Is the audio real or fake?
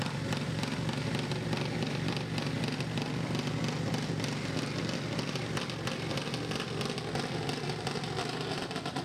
real